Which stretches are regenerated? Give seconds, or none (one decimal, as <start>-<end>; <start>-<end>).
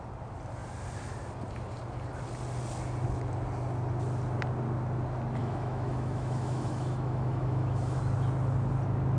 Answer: 5.4-8.0